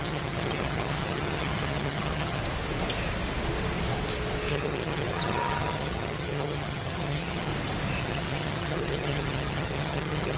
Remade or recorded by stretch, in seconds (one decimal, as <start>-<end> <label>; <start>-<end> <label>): 0.0-2.4 remade; 2.4-4.5 recorded; 4.5-7.5 remade; 7.5-8.0 recorded; 8.0-10.4 remade